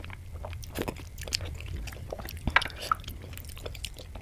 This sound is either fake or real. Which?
real